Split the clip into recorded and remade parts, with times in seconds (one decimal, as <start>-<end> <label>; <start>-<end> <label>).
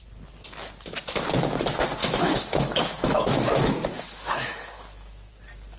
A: 0.0-2.0 recorded; 2.0-5.3 remade; 5.3-5.8 recorded